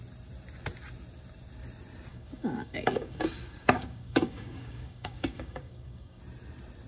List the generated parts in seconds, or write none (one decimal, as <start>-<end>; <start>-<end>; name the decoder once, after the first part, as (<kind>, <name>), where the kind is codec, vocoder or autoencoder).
2.1-6.2 (codec, DAC)